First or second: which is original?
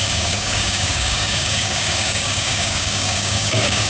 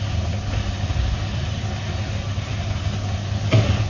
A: second